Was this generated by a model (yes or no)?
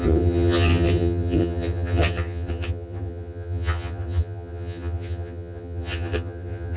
yes